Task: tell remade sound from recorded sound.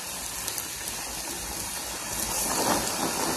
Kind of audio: recorded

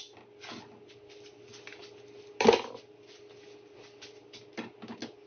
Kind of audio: recorded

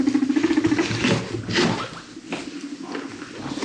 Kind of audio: recorded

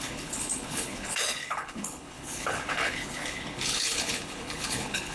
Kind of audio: remade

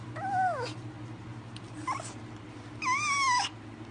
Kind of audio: recorded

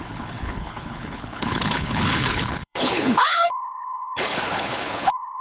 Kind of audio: remade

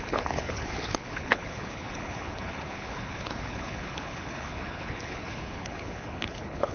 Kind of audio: remade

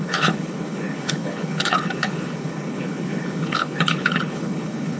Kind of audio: remade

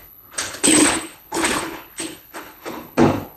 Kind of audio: remade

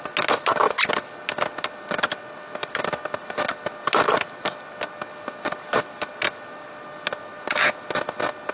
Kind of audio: recorded